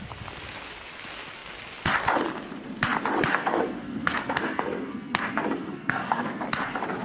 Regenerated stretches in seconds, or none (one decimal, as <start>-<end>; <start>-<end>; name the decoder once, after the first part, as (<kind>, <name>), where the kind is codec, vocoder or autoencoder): 3.3-6.4 (codec, SNAC)